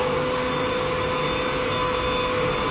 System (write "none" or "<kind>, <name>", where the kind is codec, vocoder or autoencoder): none